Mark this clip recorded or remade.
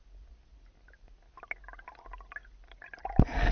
recorded